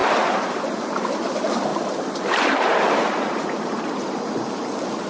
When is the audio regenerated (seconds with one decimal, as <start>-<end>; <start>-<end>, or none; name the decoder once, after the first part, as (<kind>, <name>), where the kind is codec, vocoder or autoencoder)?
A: none